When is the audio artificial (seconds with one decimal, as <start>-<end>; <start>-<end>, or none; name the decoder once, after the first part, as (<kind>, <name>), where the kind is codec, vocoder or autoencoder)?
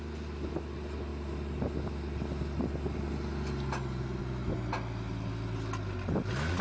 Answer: none